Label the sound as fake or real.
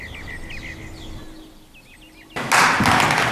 real